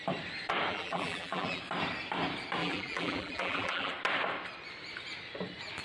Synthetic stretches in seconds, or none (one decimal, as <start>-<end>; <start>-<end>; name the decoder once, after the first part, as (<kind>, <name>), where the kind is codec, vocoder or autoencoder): 0.7-1.6 (vocoder, BigVGAN v2); 2.6-3.9